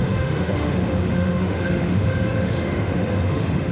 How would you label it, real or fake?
fake